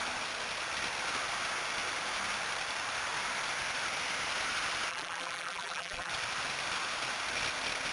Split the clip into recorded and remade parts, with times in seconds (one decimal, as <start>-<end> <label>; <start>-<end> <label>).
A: 0.0-4.9 recorded; 4.9-6.1 remade; 6.1-7.9 recorded